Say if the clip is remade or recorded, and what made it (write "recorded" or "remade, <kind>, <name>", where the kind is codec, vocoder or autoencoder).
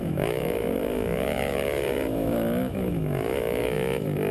remade, autoencoder, DAC-VAE